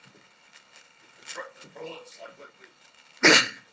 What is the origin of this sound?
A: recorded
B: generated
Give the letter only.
B